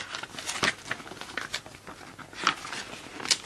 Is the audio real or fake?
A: real